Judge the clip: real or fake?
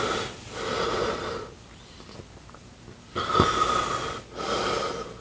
real